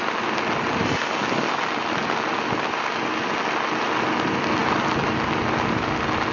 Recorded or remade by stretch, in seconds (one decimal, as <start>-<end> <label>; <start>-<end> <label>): 0.0-6.3 recorded